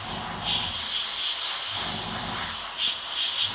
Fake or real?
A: real